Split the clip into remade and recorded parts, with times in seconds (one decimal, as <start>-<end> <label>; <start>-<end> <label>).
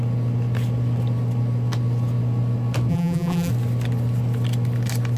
0.0-2.9 recorded; 2.9-3.5 remade; 3.5-5.2 recorded